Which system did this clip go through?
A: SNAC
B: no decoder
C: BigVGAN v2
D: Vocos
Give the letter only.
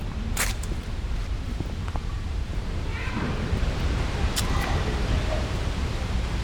C